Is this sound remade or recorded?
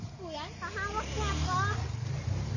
recorded